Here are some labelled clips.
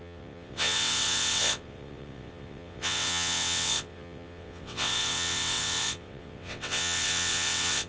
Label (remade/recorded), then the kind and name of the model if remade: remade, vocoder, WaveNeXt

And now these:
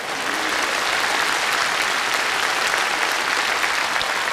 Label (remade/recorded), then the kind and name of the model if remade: recorded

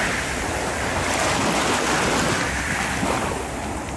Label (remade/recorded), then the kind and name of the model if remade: recorded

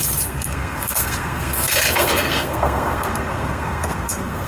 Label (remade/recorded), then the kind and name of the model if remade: remade, codec, SNAC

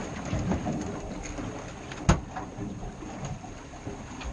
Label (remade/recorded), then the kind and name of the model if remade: recorded